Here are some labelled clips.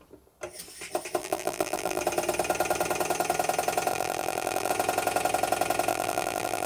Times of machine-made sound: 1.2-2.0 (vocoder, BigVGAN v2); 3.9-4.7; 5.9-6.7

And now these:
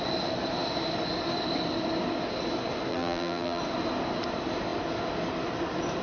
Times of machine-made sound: 2.9-3.6 (vocoder, BigVGAN v2)

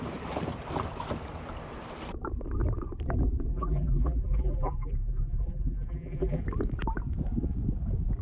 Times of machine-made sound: 3.5-6.4 (vocoder, BigVGAN v2)

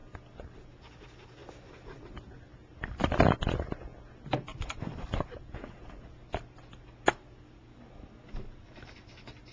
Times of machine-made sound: 4.5-5.9 (vocoder, BigVGAN v2)

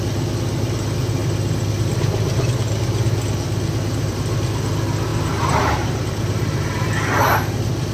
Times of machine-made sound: 5.1-6.9 (vocoder, BigVGAN v2)

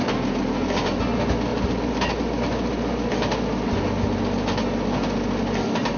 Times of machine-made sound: 1.5-2.1 (vocoder, BigVGAN v2)

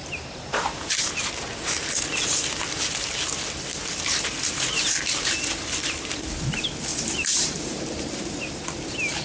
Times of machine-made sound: 0.0-2.0 (vocoder, BigVGAN v2); 6.9-8.5